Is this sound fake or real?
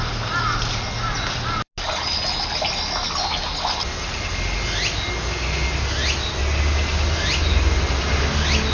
real